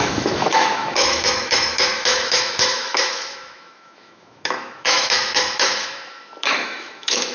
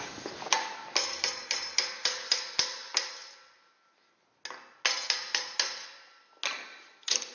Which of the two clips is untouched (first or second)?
second